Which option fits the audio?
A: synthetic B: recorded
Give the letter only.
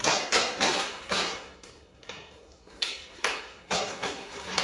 A